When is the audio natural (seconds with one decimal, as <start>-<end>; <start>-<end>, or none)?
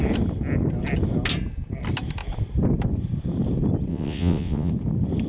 0.0-3.9; 4.7-5.3